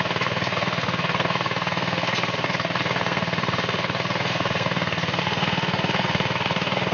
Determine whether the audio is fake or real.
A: fake